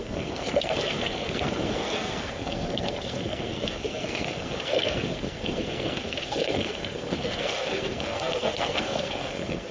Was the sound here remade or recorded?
remade